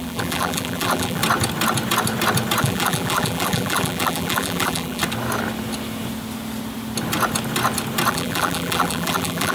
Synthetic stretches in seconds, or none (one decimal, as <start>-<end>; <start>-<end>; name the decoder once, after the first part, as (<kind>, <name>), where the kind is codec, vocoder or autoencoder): 0.0-1.2 (vocoder, BigVGAN v2); 2.6-5.0; 8.1-9.5